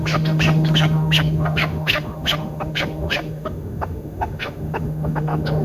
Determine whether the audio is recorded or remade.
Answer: remade